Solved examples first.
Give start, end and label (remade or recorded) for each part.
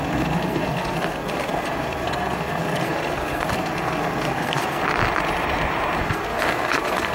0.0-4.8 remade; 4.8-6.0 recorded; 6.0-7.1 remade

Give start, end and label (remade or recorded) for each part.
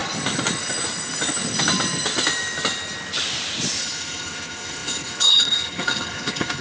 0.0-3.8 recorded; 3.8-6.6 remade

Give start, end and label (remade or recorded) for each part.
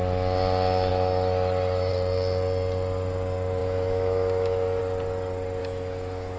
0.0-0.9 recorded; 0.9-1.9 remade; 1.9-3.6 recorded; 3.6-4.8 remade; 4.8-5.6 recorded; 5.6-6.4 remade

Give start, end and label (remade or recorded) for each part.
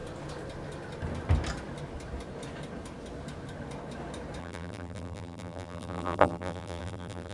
0.0-4.4 recorded; 4.4-7.3 remade